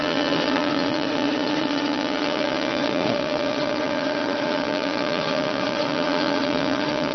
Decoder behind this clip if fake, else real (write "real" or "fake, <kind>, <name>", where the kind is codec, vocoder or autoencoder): fake, vocoder, Vocos